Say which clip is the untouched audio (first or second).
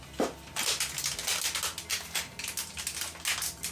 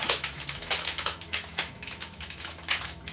first